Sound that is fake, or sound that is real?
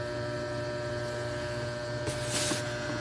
real